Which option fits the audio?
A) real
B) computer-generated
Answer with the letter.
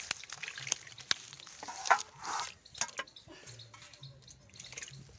A